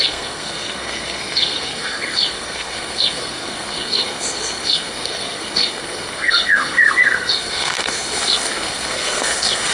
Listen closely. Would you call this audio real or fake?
fake